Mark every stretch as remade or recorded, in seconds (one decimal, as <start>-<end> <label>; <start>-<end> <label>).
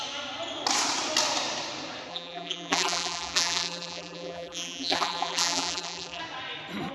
0.0-2.1 recorded; 2.1-6.2 remade; 6.2-6.9 recorded